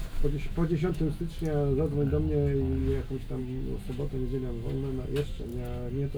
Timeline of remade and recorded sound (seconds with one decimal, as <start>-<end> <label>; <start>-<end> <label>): 0.0-1.2 remade; 1.2-2.8 recorded; 2.8-3.4 remade; 3.4-6.2 recorded